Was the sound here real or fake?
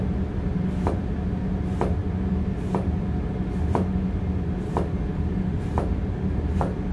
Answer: real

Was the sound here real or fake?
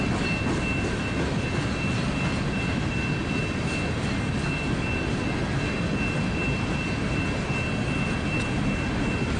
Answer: real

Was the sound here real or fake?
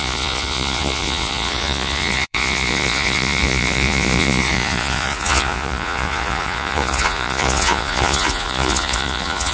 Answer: fake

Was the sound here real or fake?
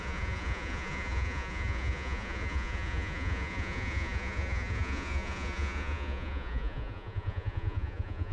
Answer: fake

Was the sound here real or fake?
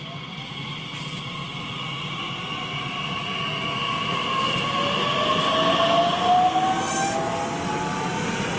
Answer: real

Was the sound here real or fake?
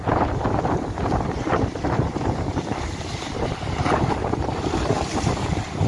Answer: fake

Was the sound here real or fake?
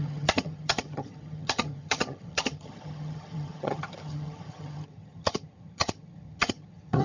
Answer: fake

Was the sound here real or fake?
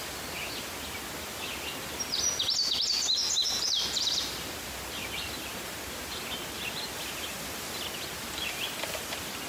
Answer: real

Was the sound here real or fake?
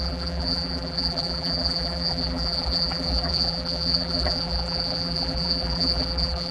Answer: fake